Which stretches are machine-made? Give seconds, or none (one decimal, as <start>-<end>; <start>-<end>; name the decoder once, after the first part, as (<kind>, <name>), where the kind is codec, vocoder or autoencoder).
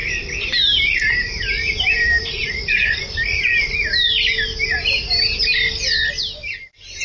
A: 0.0-3.6 (vocoder, BigVGAN v2); 4.5-5.4